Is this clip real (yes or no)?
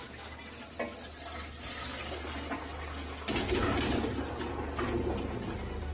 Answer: yes